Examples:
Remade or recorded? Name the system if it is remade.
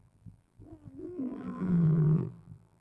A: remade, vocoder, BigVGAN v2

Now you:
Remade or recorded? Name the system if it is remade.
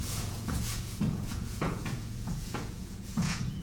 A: remade, vocoder, Vocos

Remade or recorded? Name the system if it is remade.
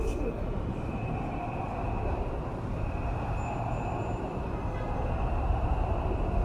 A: recorded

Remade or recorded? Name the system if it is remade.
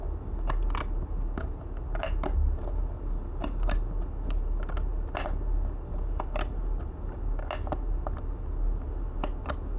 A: recorded